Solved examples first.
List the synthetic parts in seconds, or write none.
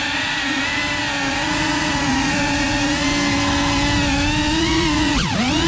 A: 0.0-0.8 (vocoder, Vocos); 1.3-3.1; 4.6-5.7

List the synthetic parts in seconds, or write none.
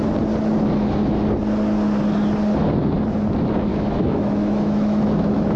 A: 3.7-5.6 (autoencoder, DAC-VAE)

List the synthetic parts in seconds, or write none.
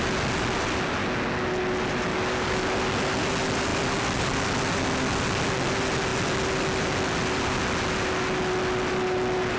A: 2.1-2.6 (codec, DAC)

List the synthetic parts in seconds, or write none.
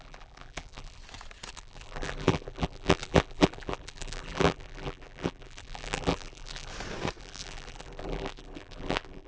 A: 0.0-1.0 (vocoder, BigVGAN v2); 1.5-6.7; 7.2-9.3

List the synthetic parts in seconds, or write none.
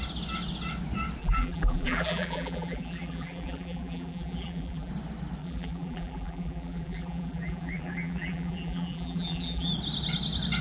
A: 1.2-4.9 (vocoder, BigVGAN v2); 5.4-9.7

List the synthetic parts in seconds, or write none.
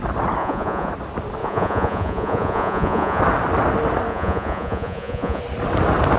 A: 0.4-0.9 (vocoder, Vocos); 1.4-3.2; 4.1-5.4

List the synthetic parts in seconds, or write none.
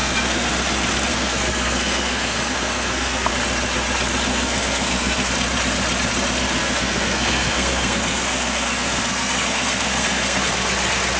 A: 0.0-0.5 (codec, SNAC); 1.1-3.3; 4.3-5.3; 6.6-10.5